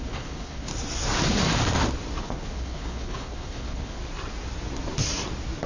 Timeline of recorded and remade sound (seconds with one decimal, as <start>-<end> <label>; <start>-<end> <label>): 0.0-0.7 remade; 0.7-2.2 recorded; 2.2-4.0 remade; 4.0-5.7 recorded